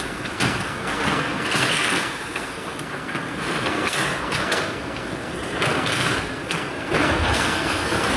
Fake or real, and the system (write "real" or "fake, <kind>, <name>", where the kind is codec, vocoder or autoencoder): fake, codec, SNAC